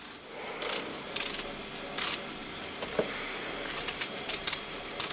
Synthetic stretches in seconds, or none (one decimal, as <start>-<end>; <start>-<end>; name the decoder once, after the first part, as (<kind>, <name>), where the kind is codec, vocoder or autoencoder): 2.4-5.1 (vocoder, BigVGAN v2)